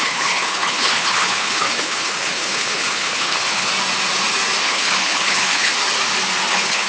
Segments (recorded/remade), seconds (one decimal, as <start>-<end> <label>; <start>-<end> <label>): 0.0-3.7 remade; 3.7-4.6 recorded; 4.6-5.7 remade; 5.7-6.5 recorded; 6.5-6.9 remade

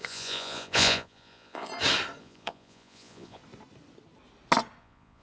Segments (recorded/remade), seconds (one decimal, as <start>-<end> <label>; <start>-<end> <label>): 0.0-1.7 remade; 1.7-2.2 recorded; 2.2-3.4 remade; 3.4-4.8 recorded; 4.8-5.2 remade

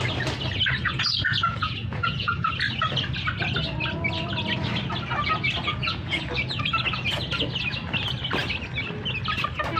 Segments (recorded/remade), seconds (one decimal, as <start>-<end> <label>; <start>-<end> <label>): 0.0-0.8 recorded; 0.8-2.5 remade; 2.5-5.7 recorded; 5.7-6.2 remade; 6.2-9.8 recorded